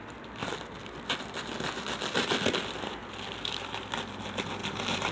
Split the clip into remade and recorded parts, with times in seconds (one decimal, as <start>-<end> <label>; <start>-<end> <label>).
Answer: 0.0-4.6 recorded; 4.6-5.1 remade